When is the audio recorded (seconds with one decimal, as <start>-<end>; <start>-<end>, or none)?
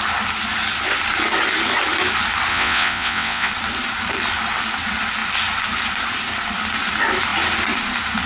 0.0-2.5; 3.5-8.3